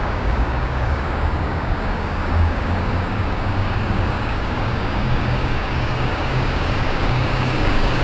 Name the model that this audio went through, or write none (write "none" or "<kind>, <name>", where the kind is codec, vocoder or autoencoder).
codec, DAC